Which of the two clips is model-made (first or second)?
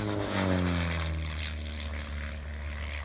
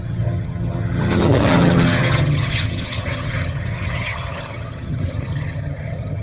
second